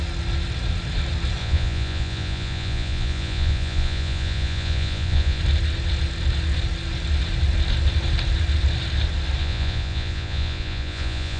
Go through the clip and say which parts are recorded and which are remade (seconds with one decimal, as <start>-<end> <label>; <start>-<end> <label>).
0.0-1.4 recorded; 1.4-5.4 remade; 5.4-9.4 recorded; 9.4-11.4 remade